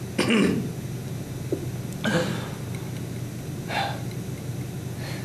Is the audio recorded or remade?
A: recorded